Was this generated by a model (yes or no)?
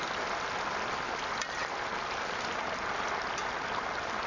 no